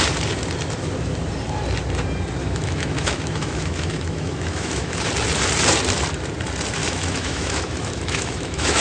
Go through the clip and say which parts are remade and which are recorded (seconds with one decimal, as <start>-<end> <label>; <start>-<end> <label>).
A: 0.0-2.4 recorded; 2.4-5.1 remade; 5.1-6.8 recorded; 6.8-8.8 remade